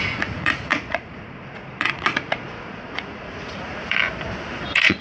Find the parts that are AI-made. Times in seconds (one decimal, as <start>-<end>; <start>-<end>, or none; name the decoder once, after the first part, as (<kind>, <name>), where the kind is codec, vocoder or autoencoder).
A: 0.0-4.0 (vocoder, Vocos); 4.5-5.0